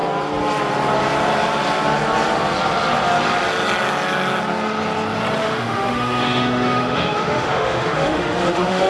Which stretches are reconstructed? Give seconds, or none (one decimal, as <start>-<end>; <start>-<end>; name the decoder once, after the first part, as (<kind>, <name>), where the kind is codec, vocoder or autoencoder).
5.4-8.9 (autoencoder, DAC-VAE)